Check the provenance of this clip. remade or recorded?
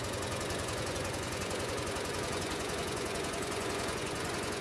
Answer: remade